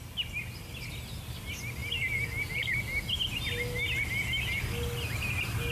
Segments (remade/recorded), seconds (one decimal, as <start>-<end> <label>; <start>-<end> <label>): 0.0-5.7 recorded